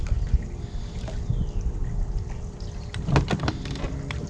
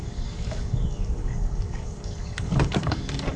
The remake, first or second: second